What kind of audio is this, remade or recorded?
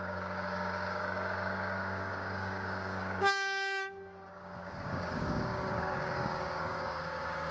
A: remade